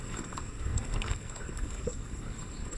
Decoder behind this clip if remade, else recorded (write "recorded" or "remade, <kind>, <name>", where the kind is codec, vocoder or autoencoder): remade, codec, SNAC